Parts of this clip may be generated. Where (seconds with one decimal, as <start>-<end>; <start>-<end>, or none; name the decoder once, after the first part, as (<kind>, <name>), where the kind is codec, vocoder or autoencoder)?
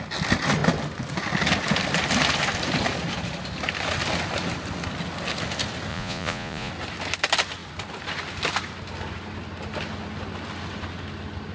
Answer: 5.9-6.7 (vocoder, Vocos)